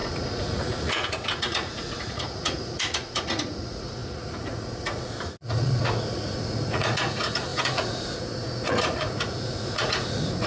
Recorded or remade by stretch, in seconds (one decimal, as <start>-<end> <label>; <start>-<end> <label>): 0.0-10.5 remade